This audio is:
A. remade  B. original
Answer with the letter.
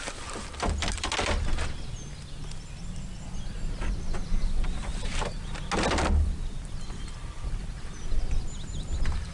B